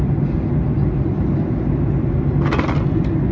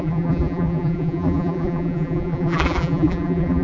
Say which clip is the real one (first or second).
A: first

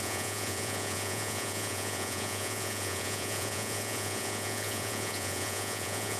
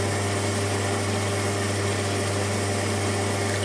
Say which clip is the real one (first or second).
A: second